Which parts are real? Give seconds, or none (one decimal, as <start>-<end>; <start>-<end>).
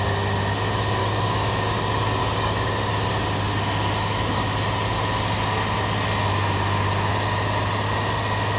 0.0-1.0; 1.8-2.2; 3.1-8.6